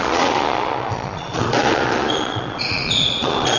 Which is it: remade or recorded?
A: remade